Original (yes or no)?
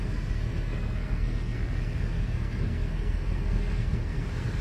no